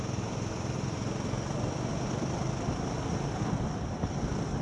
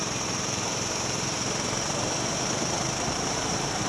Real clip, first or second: first